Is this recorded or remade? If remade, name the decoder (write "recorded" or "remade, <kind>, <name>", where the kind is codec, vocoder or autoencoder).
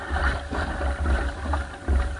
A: recorded